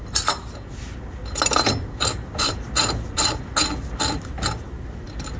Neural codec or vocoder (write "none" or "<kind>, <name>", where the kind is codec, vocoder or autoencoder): none